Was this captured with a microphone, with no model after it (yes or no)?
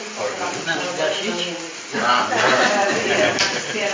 no